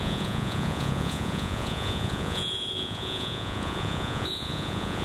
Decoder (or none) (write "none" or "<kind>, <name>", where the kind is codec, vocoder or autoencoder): vocoder, Vocos